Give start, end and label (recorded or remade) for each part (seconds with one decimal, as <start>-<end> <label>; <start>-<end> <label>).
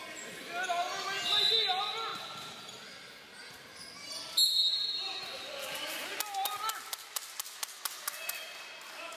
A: 0.0-2.1 recorded; 2.1-2.6 remade; 2.6-9.2 recorded